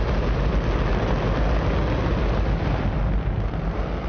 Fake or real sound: real